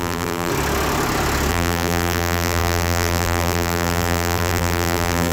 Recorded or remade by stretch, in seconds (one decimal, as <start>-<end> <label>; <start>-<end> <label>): 0.0-0.5 remade; 0.5-1.5 recorded; 1.5-5.3 remade